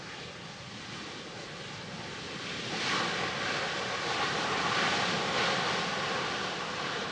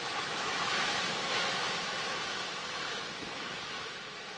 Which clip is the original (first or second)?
first